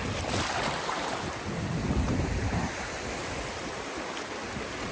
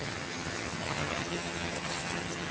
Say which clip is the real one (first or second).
first